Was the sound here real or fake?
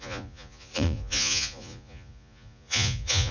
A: fake